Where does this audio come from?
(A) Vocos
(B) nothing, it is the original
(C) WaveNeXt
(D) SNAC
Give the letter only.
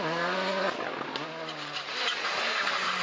B